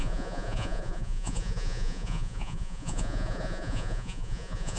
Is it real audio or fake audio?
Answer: fake